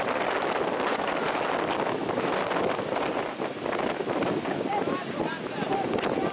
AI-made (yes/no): no